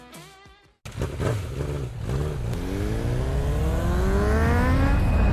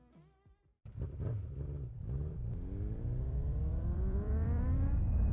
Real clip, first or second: first